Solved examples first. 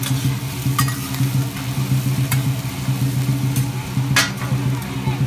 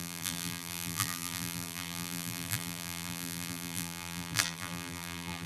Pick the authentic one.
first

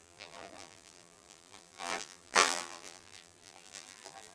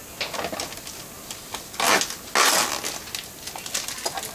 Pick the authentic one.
second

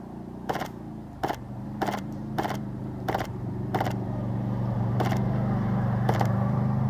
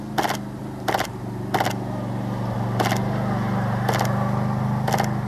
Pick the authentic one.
second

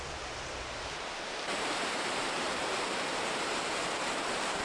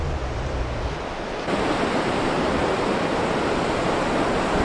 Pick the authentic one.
second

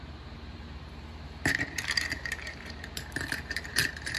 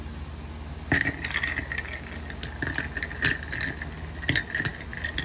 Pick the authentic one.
second